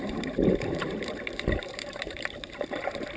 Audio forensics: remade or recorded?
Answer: remade